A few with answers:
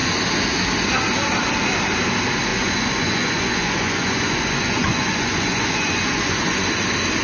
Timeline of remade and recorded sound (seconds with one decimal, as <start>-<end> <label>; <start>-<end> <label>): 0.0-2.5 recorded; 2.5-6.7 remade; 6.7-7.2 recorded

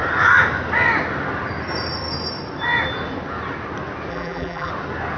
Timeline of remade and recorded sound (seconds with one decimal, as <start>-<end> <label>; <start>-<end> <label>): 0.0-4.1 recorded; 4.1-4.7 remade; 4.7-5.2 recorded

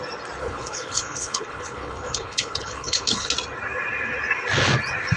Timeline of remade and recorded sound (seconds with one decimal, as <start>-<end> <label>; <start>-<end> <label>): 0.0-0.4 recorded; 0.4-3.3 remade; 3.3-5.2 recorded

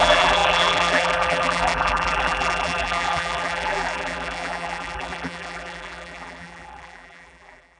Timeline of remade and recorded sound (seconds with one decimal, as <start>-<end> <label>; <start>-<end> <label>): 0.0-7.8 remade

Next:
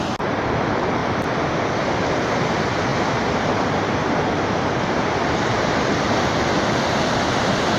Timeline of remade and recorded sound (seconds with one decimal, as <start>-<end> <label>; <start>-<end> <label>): 0.0-7.8 recorded